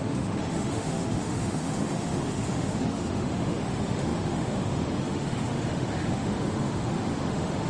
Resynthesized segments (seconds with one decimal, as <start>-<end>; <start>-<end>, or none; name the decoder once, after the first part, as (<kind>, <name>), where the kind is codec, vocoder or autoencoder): 0.0-7.7 (autoencoder, DAC-VAE)